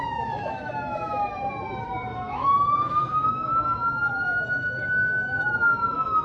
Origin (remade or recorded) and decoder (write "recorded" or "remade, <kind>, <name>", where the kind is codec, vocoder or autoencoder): remade, autoencoder, DAC-VAE